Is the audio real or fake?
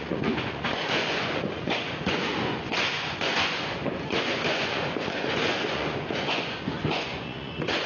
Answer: fake